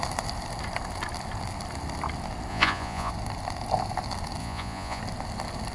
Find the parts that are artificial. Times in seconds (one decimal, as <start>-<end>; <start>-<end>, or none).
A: 2.5-3.1; 4.4-5.0